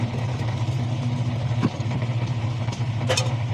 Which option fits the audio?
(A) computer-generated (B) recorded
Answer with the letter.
A